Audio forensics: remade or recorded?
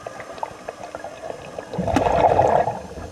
recorded